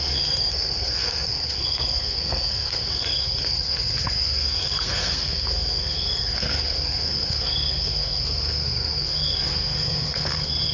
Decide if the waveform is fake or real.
fake